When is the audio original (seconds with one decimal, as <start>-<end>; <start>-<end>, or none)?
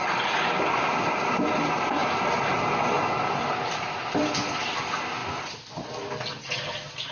0.0-7.1